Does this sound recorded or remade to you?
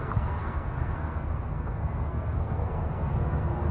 remade